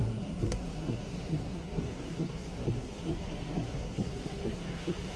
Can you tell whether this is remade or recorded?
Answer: remade